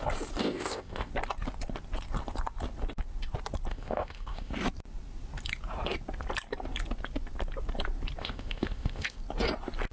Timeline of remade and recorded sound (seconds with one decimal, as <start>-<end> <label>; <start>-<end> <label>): 0.0-0.4 recorded; 0.4-1.1 remade; 1.1-3.7 recorded; 3.7-4.5 remade; 4.5-8.2 recorded; 8.2-9.2 remade; 9.2-9.9 recorded